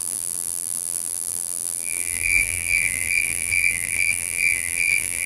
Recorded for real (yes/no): no